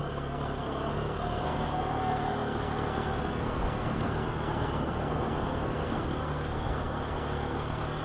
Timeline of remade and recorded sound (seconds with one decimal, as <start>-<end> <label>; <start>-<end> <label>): 0.0-8.0 remade